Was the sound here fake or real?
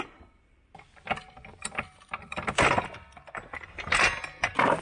real